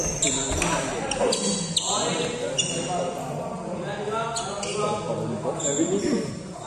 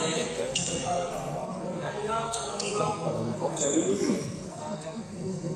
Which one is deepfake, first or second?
second